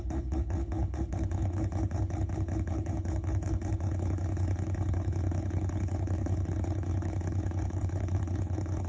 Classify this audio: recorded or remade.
remade